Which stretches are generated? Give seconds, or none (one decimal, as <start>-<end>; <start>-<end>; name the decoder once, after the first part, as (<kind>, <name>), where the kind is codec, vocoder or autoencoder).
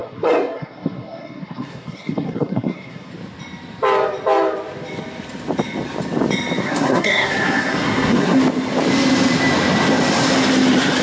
0.0-3.1 (codec, SNAC); 6.6-8.4